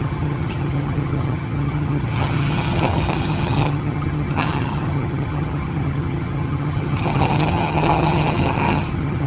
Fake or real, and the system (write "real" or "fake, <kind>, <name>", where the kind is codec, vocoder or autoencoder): fake, vocoder, HiFi-GAN